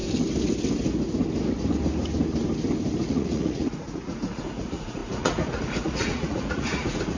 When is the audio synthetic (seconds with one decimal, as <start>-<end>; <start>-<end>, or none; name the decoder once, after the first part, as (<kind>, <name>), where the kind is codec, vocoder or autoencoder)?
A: 3.1-7.2 (vocoder, Vocos)

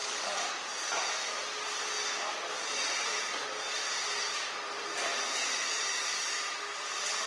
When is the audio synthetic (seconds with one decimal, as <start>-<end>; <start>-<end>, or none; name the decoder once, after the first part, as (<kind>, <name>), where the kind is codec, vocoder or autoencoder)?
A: 0.0-0.5 (codec, DAC)